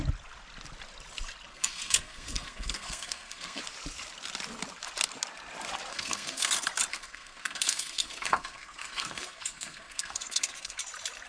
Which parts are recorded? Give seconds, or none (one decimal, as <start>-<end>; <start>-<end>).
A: 0.0-1.5; 3.6-5.9; 6.5-6.9; 10.8-11.3